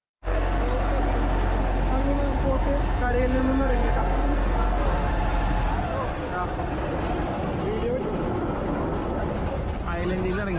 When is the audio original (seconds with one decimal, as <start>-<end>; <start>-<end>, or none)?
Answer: 0.6-3.4; 5.1-10.6